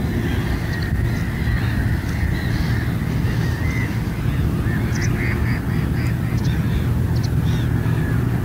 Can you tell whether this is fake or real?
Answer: real